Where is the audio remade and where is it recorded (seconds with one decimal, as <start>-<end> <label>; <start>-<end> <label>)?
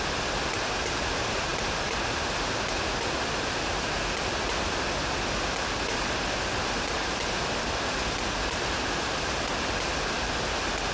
0.0-10.9 recorded